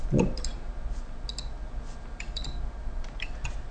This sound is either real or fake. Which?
real